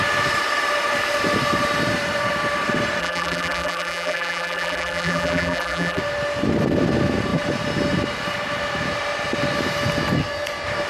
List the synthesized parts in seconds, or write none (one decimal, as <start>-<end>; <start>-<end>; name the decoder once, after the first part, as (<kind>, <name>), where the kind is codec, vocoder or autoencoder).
3.0-6.0 (vocoder, BigVGAN v2)